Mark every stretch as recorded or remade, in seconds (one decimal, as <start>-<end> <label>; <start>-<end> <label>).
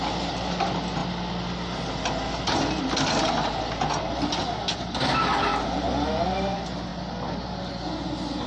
0.0-8.5 recorded